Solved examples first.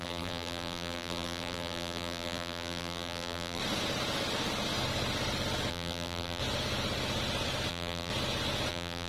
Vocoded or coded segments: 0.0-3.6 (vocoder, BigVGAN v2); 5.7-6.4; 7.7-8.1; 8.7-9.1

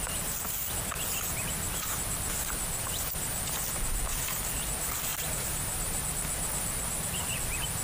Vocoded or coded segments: 5.1-6.0 (vocoder, BigVGAN v2)

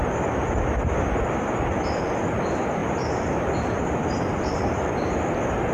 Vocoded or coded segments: 2.8-5.1 (vocoder, BigVGAN v2)

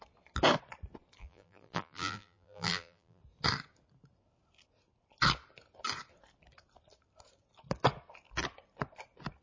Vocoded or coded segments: 1.2-3.2 (vocoder, BigVGAN v2)

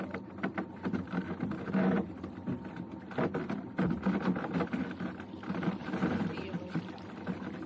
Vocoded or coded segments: 5.8-7.7 (vocoder, BigVGAN v2)

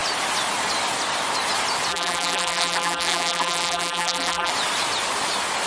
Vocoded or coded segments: 1.9-4.5 (vocoder, BigVGAN v2)

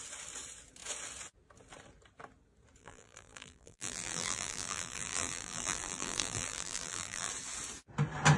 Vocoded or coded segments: 2.8-7.3 (vocoder, BigVGAN v2)

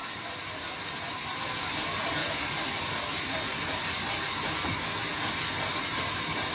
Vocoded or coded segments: 0.0-5.1 (vocoder, BigVGAN v2); 5.8-6.5